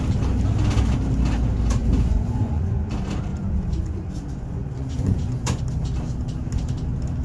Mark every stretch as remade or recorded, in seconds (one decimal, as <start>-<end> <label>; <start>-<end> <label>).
0.0-1.8 recorded; 1.8-2.9 remade; 2.9-3.3 recorded; 3.3-5.6 remade; 5.6-7.2 recorded